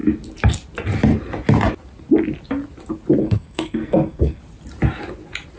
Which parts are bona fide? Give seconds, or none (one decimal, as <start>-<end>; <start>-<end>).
0.0-3.2; 4.4-5.6